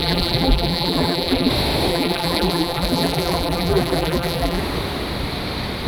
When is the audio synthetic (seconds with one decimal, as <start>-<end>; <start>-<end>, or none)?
0.0-1.5; 1.9-4.6